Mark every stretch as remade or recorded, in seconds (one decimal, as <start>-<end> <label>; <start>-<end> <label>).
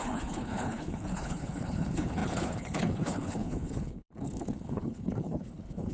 0.0-5.9 remade